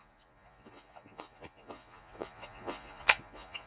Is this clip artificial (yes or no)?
yes